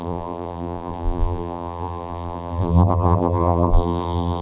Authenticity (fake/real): fake